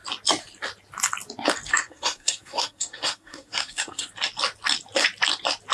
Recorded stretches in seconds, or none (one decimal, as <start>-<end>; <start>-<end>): 0.0-1.7; 4.1-5.7